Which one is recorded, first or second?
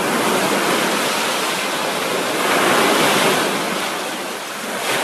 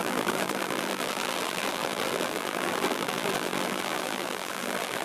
first